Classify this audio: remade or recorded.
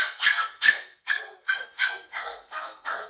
remade